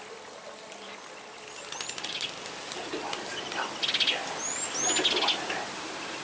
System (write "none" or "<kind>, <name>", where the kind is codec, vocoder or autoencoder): none